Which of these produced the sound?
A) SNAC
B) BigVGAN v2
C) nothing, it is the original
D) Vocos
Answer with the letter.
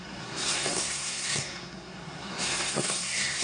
A